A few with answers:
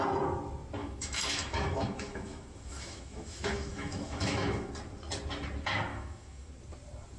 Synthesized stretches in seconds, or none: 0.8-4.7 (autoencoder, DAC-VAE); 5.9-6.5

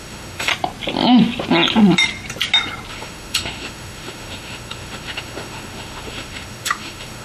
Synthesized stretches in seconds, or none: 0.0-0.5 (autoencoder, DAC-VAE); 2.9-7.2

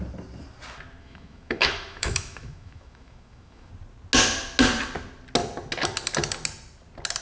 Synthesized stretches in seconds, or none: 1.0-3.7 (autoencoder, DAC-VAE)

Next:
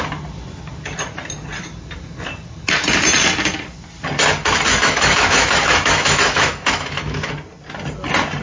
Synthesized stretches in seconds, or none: 4.7-7.3 (autoencoder, DAC-VAE)

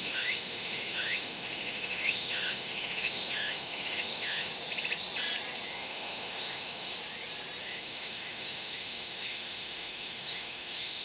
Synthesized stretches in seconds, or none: 0.0-4.5 (autoencoder, DAC-VAE); 5.7-6.9; 7.6-11.0